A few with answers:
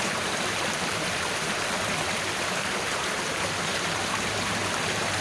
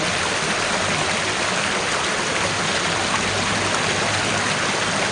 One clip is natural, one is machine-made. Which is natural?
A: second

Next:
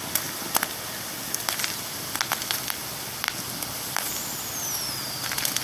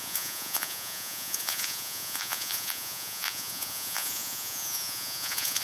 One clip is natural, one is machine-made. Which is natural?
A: first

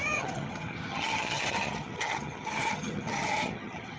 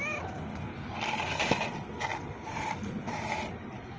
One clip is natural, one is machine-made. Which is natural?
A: second